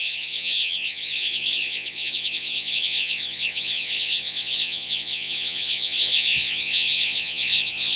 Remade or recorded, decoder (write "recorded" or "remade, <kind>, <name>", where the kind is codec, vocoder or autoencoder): remade, vocoder, Vocos